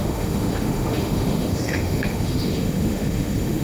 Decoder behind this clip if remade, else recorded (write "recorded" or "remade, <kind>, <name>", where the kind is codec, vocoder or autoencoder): remade, autoencoder, DAC-VAE